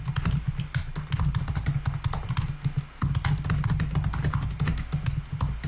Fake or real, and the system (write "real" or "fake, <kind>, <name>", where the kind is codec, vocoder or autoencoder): real